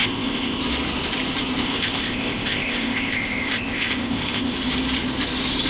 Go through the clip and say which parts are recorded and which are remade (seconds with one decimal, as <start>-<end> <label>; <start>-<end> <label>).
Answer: 0.0-0.6 remade; 0.6-1.6 recorded; 1.6-4.5 remade; 4.5-5.7 recorded